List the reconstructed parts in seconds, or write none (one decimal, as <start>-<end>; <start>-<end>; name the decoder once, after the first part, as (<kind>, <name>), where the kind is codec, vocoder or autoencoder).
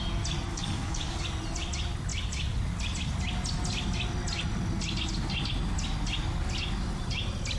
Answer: 0.5-1.2 (codec, DAC)